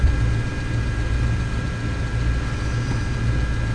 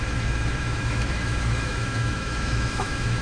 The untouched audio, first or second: first